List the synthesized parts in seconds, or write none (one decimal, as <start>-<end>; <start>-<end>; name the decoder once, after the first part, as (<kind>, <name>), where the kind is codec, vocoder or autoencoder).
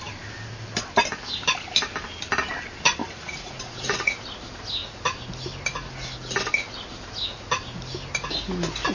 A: 3.0-4.1 (vocoder, Vocos)